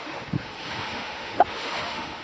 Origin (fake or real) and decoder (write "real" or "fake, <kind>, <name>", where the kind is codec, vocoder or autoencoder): fake, autoencoder, DAC-VAE